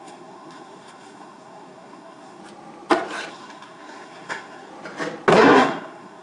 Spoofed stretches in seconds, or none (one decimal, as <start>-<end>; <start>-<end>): 0.0-2.4; 3.3-4.7; 5.3-6.2